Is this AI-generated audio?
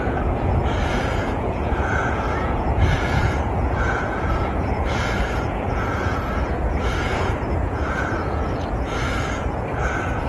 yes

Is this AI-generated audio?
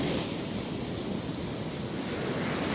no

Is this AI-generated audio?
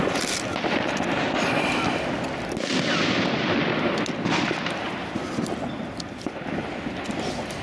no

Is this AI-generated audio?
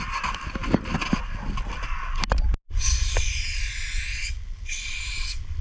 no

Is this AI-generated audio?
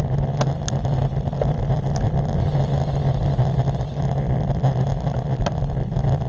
no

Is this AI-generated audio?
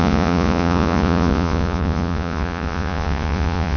yes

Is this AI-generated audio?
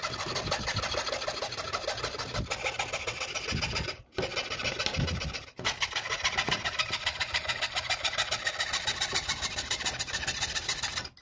no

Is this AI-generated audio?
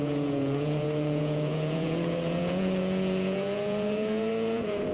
yes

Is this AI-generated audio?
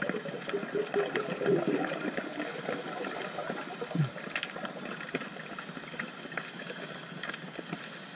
no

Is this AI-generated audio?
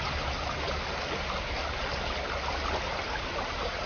no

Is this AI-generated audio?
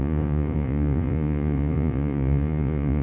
yes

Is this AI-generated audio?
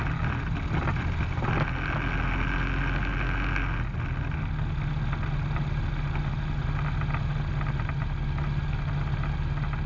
no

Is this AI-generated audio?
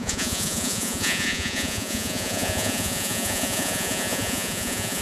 yes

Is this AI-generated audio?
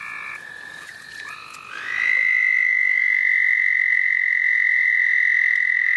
yes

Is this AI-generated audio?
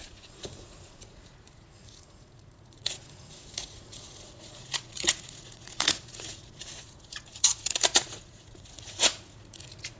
yes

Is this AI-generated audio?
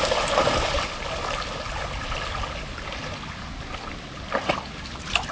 no